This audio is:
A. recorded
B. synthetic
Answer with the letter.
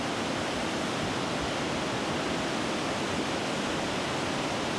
A